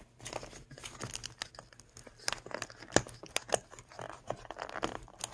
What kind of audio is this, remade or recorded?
recorded